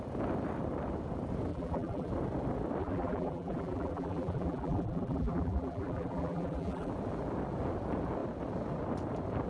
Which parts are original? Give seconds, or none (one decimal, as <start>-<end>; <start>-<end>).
0.0-1.5; 2.1-2.8; 6.9-9.5